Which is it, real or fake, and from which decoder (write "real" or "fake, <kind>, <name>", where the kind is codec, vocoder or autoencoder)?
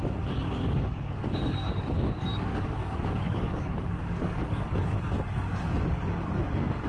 fake, codec, DAC